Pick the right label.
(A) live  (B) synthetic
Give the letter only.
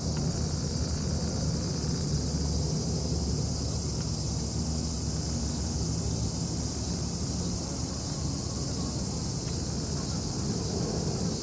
A